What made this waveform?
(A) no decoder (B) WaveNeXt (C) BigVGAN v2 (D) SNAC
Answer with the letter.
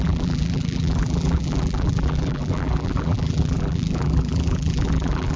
C